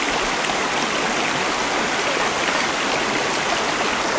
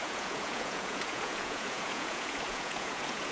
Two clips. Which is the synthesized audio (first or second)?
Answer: second